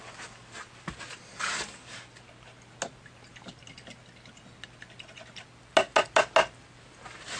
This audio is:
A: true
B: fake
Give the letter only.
A